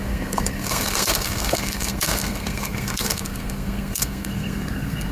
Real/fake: fake